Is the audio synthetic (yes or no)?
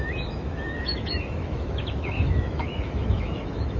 yes